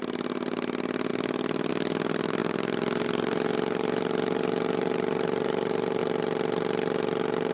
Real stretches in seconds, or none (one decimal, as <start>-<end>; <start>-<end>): 0.0-2.4; 6.0-7.5